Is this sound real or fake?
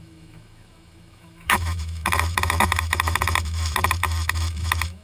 fake